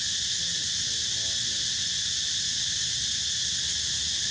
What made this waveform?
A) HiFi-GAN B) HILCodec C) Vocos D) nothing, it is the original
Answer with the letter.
D